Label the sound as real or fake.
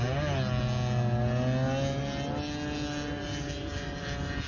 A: real